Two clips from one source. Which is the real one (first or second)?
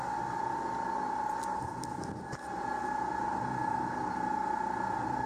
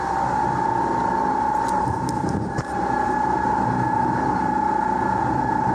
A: first